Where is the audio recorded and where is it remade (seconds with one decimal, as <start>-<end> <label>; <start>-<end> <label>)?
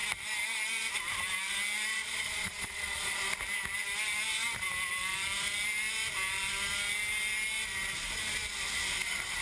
0.0-1.9 recorded; 1.9-3.2 remade; 3.2-9.4 recorded